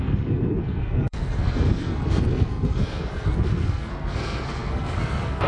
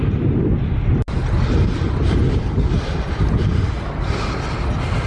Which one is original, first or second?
second